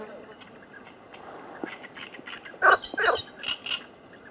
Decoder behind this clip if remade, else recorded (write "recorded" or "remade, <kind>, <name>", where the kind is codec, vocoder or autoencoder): recorded